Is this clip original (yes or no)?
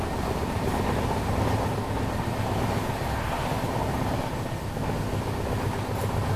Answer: yes